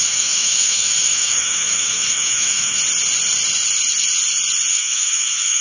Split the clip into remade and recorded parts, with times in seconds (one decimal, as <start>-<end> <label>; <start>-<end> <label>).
0.0-2.8 remade; 2.8-4.7 recorded; 4.7-5.6 remade